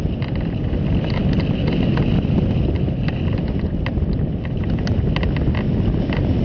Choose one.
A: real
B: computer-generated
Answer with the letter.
A